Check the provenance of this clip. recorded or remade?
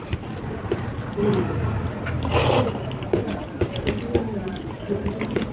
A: recorded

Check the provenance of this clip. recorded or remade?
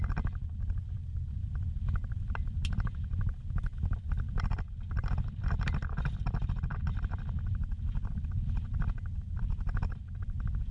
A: recorded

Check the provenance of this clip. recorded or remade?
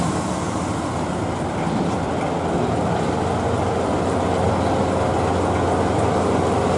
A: recorded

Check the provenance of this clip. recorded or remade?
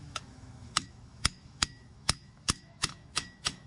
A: remade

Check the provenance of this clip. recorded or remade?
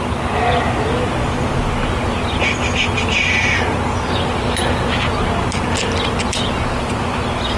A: recorded